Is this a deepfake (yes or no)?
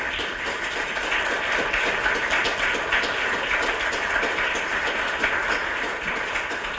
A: no